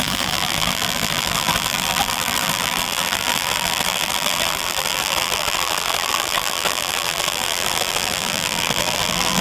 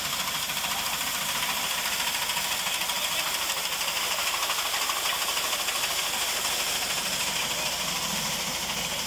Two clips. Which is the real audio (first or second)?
second